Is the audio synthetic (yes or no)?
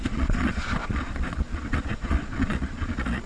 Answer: yes